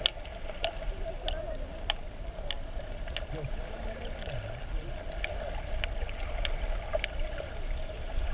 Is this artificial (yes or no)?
no